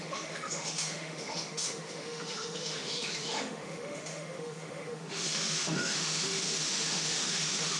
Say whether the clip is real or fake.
fake